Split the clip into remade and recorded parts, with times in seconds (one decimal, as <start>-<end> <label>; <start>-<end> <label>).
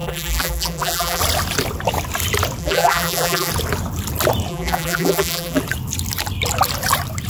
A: 0.0-1.2 remade; 1.2-2.6 recorded; 2.6-3.5 remade; 3.5-4.5 recorded; 4.5-5.6 remade; 5.6-7.3 recorded